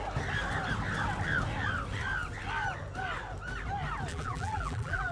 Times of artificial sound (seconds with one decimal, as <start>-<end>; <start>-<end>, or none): 4.1-5.1